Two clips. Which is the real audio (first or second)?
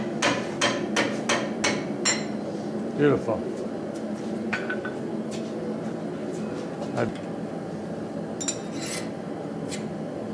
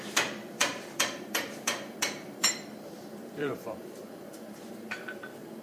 first